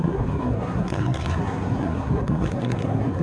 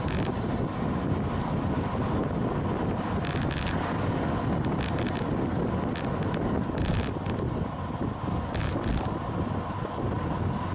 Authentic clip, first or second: second